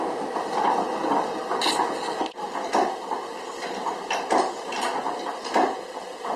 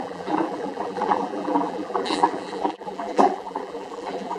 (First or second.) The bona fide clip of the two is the first